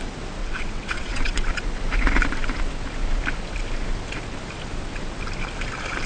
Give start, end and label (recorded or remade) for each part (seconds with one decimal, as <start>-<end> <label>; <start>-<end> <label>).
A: 0.0-0.4 recorded; 0.4-1.5 remade; 1.5-6.1 recorded